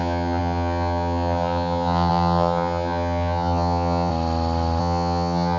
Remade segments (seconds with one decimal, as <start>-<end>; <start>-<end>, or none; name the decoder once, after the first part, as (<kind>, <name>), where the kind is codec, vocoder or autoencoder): 0.0-4.1 (vocoder, HiFi-GAN); 4.8-5.6